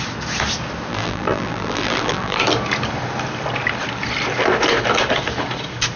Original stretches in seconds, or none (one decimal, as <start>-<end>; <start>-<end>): 0.0-0.9; 2.4-6.0